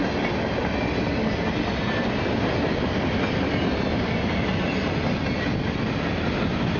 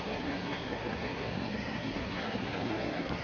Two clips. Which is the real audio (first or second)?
first